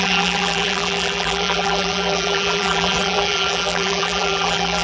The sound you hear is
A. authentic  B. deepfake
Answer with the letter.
B